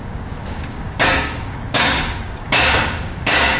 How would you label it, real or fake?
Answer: fake